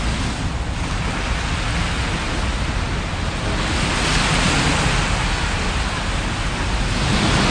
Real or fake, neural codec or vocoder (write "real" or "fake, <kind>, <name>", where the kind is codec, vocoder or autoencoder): real